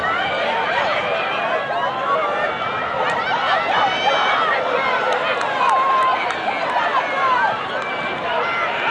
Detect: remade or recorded recorded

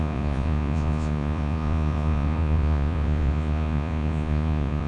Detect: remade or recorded remade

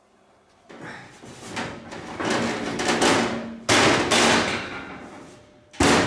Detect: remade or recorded recorded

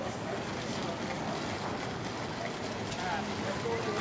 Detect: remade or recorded recorded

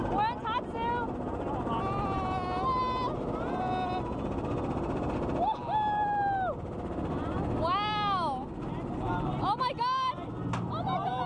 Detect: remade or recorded recorded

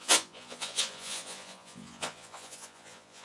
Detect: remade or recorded remade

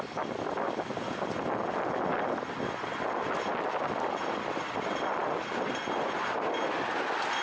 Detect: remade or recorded recorded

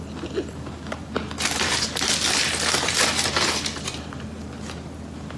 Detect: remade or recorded recorded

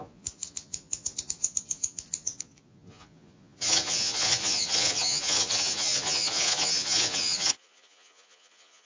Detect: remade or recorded remade